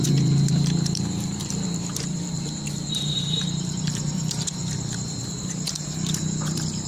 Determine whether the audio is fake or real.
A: fake